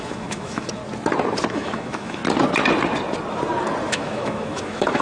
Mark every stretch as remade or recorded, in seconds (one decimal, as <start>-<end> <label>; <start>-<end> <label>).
0.0-0.8 remade; 0.8-1.5 recorded; 1.5-2.2 remade; 2.2-3.9 recorded; 3.9-5.0 remade